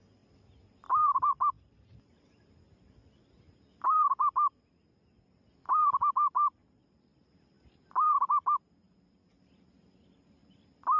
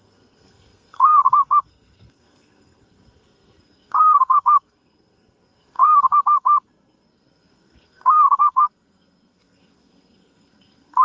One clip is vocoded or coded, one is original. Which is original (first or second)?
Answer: first